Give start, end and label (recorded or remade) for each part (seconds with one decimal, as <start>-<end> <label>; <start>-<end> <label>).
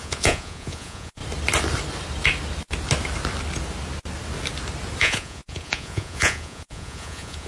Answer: 0.0-1.2 remade; 1.2-5.0 recorded; 5.0-7.5 remade